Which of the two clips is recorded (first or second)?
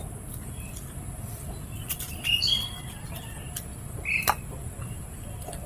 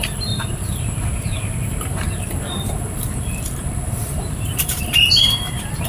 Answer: first